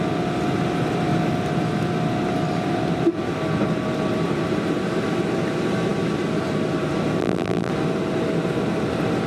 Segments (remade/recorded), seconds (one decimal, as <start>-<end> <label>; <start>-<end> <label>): 0.0-7.2 recorded; 7.2-7.7 remade; 7.7-9.3 recorded